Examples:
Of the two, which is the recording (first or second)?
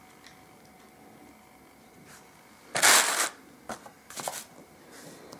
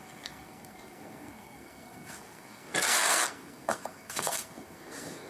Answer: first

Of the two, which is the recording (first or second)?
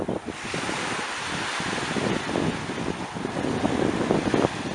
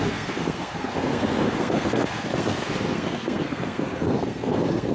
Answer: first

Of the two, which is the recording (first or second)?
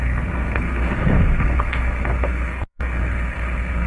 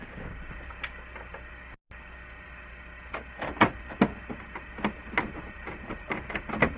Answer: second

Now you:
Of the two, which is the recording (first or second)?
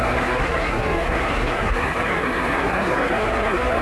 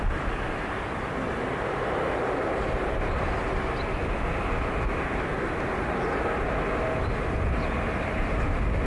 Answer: second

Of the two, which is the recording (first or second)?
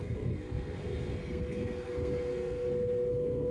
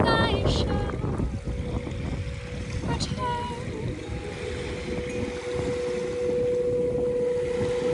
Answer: second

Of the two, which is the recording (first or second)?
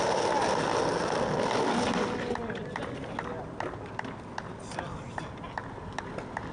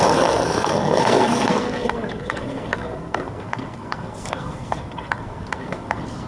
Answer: first